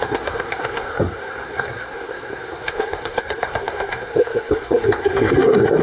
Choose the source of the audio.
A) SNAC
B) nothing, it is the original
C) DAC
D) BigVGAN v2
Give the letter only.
A